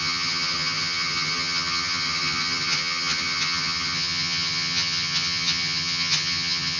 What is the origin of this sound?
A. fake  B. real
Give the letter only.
A